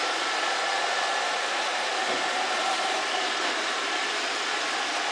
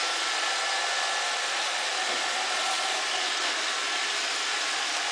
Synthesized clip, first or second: first